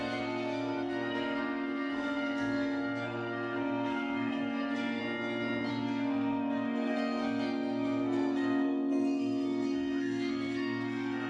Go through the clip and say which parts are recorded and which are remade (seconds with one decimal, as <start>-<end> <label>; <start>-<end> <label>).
0.0-5.0 remade; 5.0-5.7 recorded; 5.7-11.3 remade